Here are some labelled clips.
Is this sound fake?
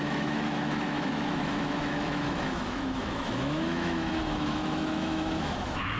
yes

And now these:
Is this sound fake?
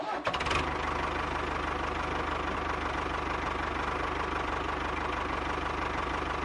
no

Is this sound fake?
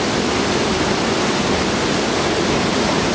no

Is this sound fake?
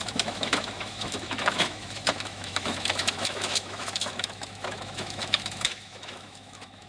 yes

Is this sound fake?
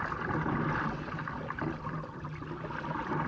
no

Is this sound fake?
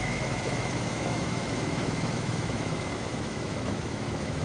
yes